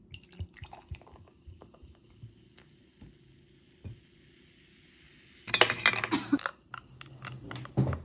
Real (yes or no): yes